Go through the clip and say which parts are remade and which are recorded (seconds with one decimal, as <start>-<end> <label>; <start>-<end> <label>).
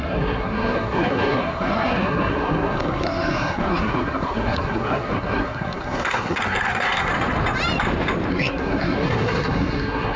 0.0-7.1 remade; 7.1-8.3 recorded; 8.3-10.2 remade